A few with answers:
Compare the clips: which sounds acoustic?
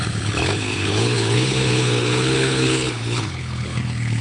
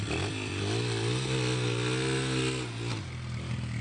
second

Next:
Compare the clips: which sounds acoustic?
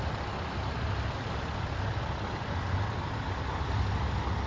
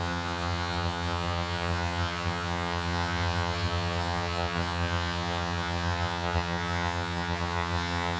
first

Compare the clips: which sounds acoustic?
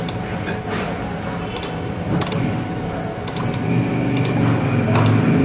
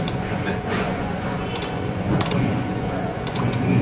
first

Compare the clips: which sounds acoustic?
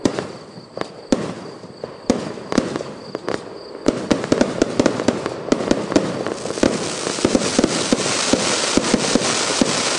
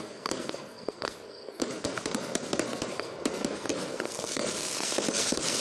first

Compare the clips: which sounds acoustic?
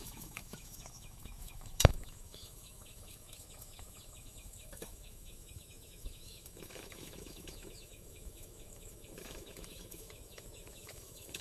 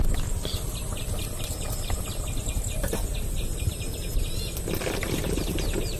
second